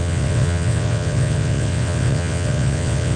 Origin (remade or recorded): remade